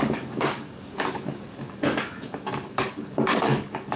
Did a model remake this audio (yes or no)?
yes